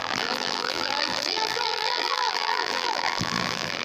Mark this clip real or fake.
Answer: fake